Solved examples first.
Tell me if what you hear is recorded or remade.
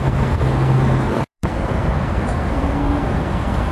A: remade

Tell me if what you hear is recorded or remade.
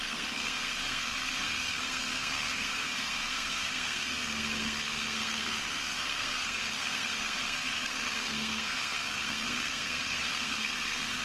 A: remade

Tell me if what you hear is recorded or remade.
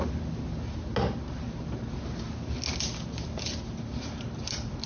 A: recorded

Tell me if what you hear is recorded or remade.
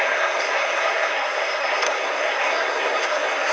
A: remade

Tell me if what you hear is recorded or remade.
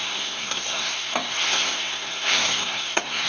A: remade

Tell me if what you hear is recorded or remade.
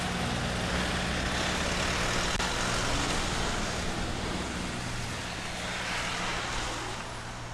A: recorded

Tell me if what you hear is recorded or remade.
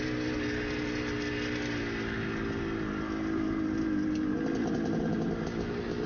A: recorded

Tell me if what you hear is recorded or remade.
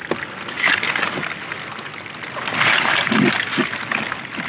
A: recorded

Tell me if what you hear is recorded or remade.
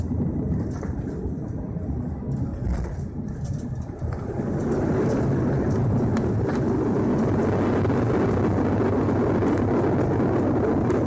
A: recorded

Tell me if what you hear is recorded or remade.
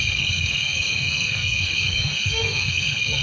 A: remade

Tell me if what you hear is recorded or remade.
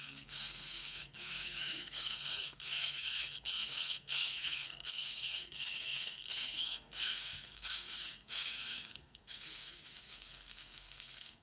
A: remade